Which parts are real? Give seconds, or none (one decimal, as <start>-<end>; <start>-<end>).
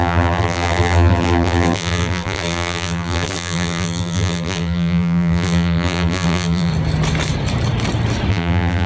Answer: 6.7-8.3